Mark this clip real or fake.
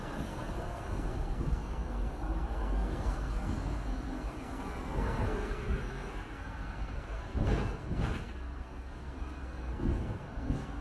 fake